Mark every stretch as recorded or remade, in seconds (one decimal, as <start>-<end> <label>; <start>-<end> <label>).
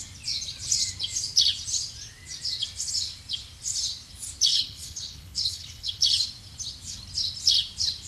0.0-4.5 recorded; 4.5-6.0 remade; 6.0-8.1 recorded